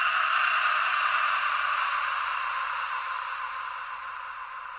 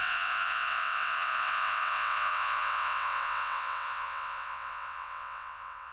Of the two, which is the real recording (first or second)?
first